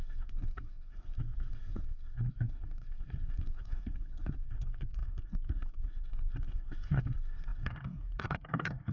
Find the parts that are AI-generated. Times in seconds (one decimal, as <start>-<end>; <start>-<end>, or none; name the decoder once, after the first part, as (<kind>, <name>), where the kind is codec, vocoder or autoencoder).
0.0-8.9 (codec, SNAC)